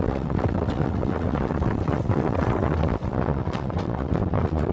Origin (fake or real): fake